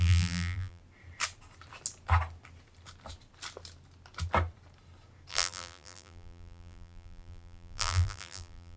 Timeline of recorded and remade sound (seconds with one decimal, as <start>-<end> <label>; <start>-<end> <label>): 0.0-0.8 remade; 0.8-5.3 recorded; 5.3-8.8 remade